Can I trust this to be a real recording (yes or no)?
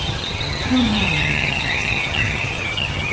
no